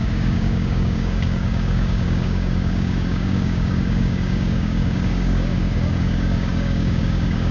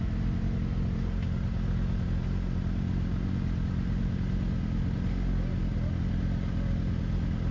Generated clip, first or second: first